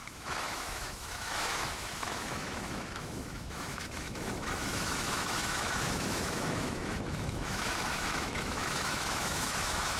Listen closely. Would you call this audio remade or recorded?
remade